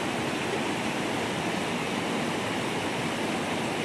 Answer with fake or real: real